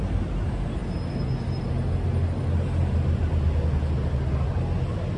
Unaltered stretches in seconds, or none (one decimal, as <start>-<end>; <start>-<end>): 0.0-5.2